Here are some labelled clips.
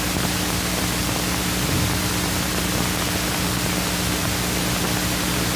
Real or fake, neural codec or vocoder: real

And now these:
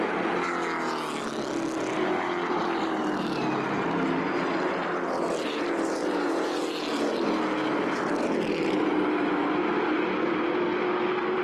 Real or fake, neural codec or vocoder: real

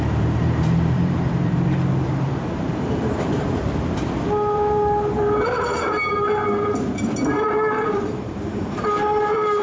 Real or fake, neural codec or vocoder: fake, vocoder, BigVGAN v2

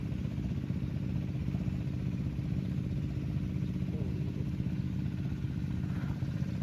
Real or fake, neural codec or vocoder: real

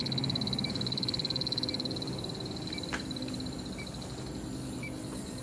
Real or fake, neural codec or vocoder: fake, vocoder, BigVGAN v2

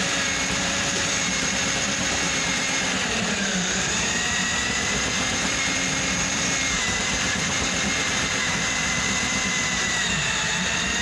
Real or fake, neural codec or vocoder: fake, vocoder, BigVGAN v2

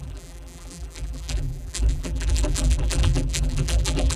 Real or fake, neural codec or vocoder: fake, vocoder, BigVGAN v2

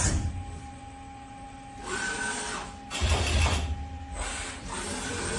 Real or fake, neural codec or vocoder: real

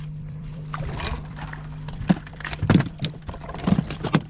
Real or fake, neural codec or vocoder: fake, vocoder, BigVGAN v2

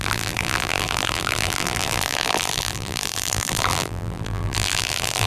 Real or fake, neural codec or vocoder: fake, vocoder, BigVGAN v2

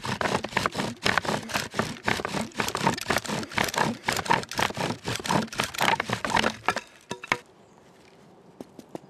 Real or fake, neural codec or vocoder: real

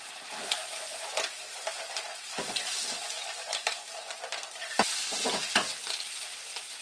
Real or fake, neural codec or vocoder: real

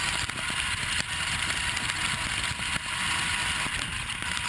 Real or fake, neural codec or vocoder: real